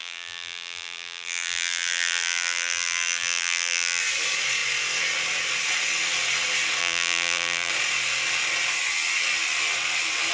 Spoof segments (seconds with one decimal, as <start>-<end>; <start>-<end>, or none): 0.0-4.0; 6.8-7.7